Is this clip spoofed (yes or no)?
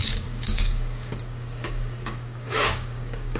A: yes